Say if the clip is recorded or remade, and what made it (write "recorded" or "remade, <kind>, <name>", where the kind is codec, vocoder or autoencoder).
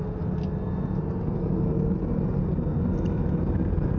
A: recorded